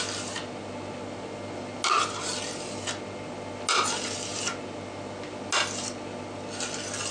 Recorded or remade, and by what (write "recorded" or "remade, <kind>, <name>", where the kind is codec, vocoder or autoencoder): recorded